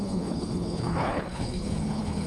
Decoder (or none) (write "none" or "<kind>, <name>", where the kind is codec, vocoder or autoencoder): codec, HILCodec